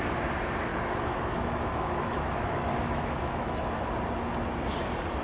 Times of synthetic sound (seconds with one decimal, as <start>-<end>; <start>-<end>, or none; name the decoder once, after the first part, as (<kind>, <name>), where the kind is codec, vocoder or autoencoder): 0.7-3.8 (autoencoder, DAC-VAE)